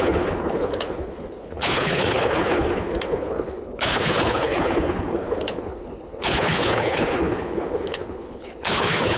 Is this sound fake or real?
fake